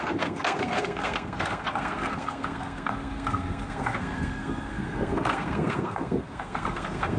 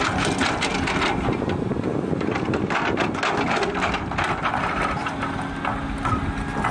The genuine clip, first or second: second